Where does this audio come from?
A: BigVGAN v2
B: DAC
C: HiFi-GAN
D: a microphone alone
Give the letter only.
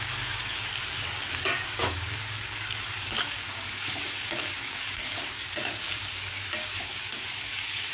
B